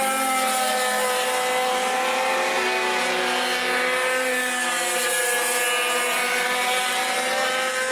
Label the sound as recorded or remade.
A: recorded